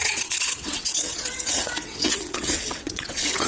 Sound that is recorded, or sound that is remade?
remade